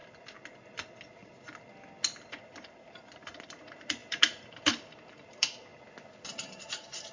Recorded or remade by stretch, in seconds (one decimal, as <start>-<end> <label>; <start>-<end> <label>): 0.0-2.3 recorded; 2.3-5.7 remade; 5.7-6.3 recorded; 6.3-7.1 remade